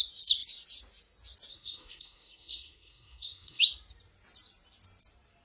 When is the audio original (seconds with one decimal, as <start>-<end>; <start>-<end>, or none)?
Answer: 0.0-1.5; 3.6-5.4